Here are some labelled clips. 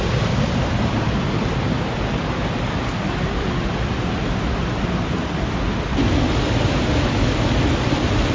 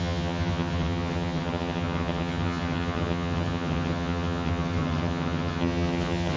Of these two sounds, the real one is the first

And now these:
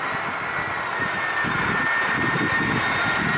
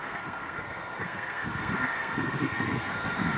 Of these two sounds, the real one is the first